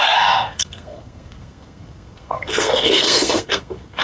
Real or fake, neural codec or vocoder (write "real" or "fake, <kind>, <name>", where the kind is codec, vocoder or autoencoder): fake, codec, SNAC